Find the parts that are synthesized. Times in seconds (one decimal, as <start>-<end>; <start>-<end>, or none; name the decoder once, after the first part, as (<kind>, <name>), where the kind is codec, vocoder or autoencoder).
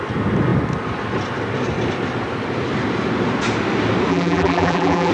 4.1-5.1 (vocoder, BigVGAN v2)